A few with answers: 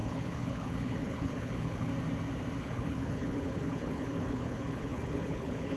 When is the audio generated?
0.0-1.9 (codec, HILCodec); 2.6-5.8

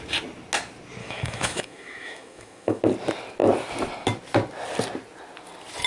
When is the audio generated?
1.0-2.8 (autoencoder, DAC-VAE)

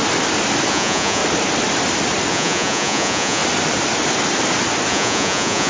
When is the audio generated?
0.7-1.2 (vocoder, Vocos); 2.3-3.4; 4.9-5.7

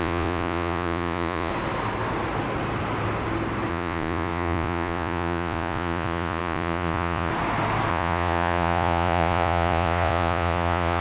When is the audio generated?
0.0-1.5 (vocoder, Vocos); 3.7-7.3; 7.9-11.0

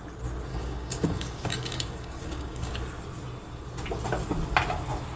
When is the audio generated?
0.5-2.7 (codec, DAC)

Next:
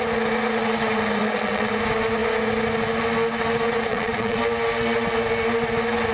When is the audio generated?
1.2-1.7 (vocoder, Vocos); 3.9-4.4

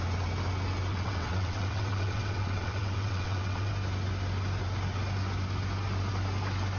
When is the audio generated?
0.9-3.7 (vocoder, WaveNeXt)

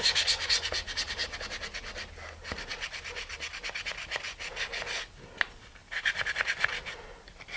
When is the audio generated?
none